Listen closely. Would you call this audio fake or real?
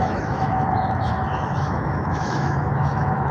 fake